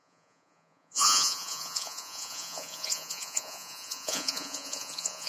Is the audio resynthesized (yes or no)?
yes